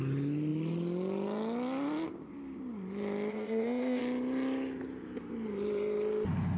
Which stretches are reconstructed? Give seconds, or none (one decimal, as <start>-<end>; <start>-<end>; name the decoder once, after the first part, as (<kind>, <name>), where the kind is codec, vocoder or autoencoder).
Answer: 3.3-4.0 (codec, ZipCodec)